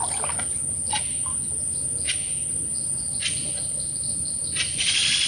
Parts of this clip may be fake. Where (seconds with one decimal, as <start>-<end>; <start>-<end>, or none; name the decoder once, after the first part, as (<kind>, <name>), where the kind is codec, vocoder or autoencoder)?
1.3-2.1 (vocoder, Vocos); 2.7-3.5